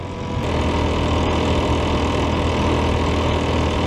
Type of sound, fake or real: real